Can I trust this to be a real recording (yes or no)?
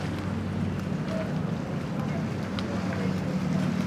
yes